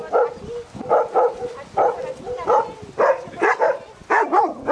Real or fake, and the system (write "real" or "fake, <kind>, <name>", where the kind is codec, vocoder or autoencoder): real